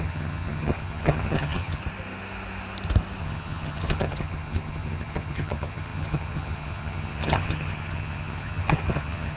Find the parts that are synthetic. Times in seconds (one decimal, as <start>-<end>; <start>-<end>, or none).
0.0-1.8; 3.2-9.4